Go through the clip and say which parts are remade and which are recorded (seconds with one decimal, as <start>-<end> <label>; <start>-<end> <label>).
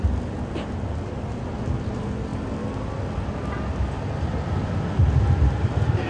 0.0-6.1 recorded